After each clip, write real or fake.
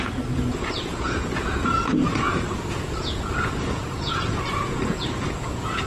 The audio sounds fake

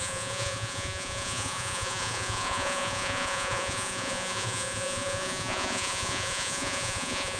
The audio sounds fake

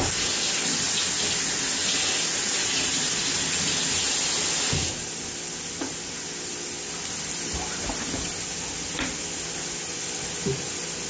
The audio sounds real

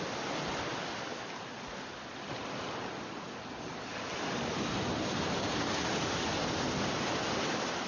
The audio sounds real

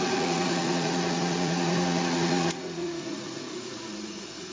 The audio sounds fake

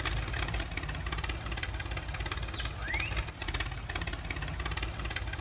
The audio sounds real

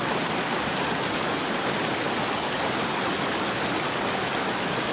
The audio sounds real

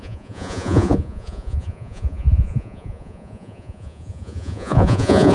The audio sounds fake